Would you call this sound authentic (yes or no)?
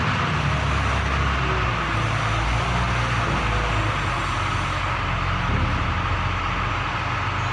yes